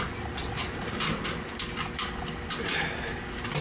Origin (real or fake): real